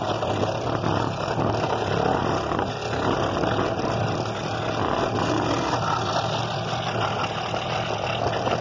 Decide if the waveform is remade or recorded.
recorded